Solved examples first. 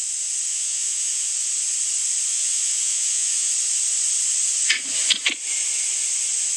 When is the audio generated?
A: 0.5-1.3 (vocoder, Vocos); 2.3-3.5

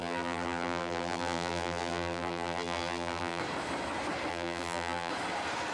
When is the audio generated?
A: 0.0-3.4 (vocoder, BigVGAN v2); 4.3-5.1

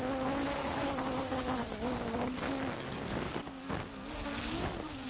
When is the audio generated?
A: 0.6-3.7 (codec, DAC)